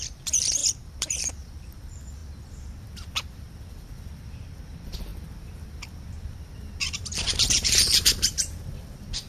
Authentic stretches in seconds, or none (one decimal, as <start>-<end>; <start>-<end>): 2.2-3.4; 5.1-5.8